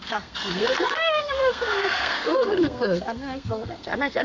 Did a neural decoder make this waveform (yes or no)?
yes